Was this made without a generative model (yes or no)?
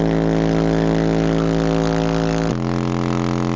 yes